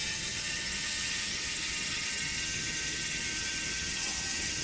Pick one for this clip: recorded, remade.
remade